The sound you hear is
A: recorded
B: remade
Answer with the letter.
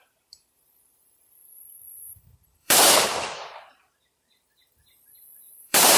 B